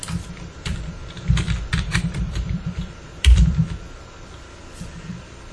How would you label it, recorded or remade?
remade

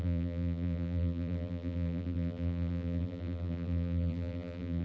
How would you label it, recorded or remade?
remade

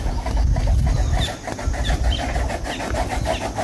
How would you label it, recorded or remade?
recorded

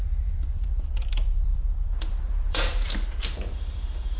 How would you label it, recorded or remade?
remade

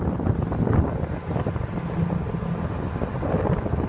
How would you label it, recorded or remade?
recorded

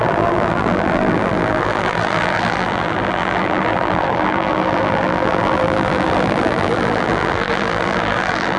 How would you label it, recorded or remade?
remade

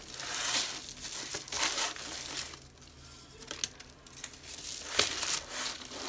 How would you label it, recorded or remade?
recorded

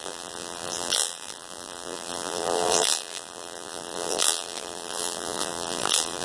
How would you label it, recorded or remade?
remade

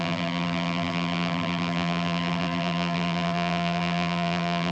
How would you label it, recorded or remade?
remade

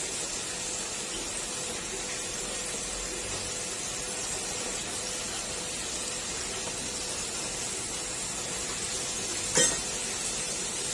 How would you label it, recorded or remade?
recorded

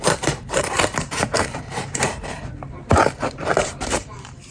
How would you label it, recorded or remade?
remade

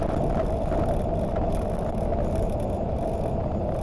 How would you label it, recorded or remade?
recorded